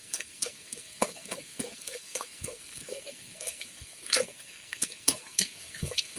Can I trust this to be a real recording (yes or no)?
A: no